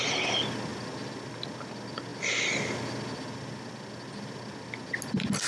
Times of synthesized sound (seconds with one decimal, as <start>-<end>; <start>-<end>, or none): none